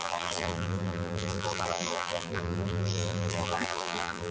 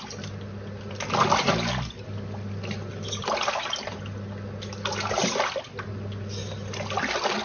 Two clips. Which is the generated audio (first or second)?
first